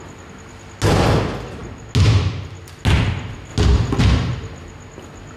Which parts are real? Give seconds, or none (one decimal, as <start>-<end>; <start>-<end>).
0.0-5.4